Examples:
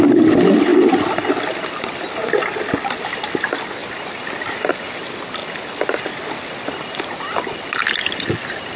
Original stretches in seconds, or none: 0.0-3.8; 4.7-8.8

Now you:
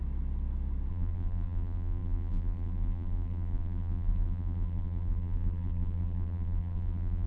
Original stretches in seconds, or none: 0.0-0.9

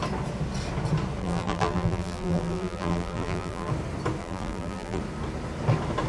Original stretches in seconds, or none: 0.0-1.2; 3.7-4.2; 5.0-6.1

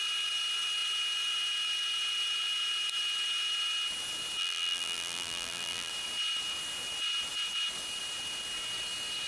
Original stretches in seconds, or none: 0.0-4.4; 5.9-9.3

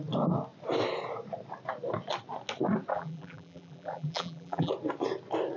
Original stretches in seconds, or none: 0.0-2.9; 4.7-5.6